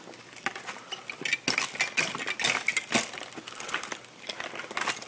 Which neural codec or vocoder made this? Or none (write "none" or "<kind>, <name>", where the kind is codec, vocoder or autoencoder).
none